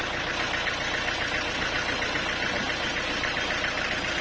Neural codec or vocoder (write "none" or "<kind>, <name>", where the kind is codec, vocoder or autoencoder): none